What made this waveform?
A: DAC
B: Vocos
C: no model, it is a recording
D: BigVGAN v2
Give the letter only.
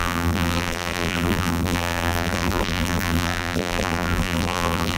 D